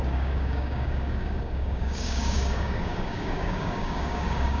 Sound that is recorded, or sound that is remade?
remade